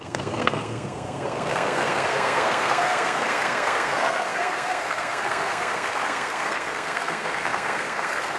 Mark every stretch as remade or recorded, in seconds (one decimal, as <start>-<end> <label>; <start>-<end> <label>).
0.0-8.4 remade